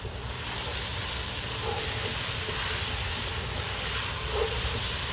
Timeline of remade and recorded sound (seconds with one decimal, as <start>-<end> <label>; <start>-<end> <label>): 0.0-5.1 recorded